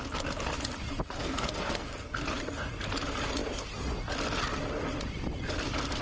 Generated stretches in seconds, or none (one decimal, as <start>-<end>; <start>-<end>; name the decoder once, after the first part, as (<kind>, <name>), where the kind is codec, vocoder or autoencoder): 1.2-2.2 (codec, SNAC)